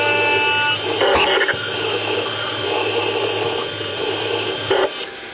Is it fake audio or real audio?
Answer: real